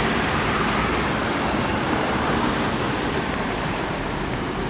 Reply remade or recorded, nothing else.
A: remade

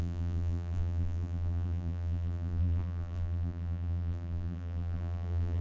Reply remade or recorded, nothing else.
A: remade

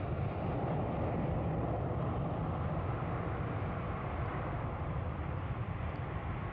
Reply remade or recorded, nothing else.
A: remade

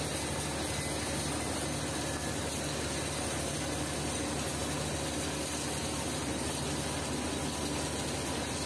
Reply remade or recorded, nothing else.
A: recorded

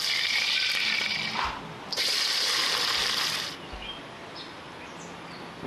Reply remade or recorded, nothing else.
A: recorded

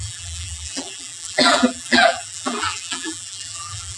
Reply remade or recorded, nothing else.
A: remade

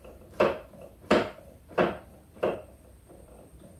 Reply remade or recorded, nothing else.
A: remade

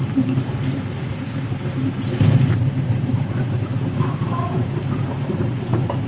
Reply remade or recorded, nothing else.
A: remade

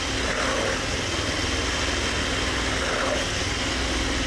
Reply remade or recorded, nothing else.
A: recorded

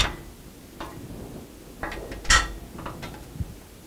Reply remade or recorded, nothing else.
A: recorded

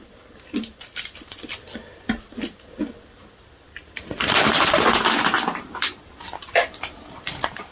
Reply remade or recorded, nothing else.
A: remade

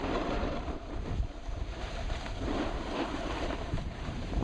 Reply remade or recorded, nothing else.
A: remade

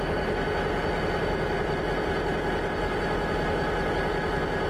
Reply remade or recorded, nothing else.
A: recorded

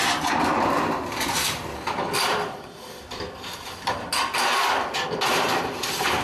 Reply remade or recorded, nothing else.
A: remade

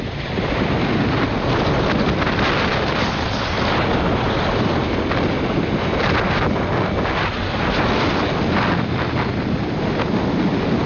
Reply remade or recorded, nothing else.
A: recorded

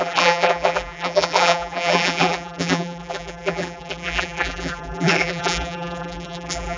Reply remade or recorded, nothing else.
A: remade